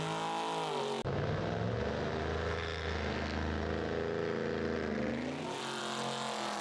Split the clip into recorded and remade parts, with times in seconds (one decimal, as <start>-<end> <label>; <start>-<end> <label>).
0.0-6.6 recorded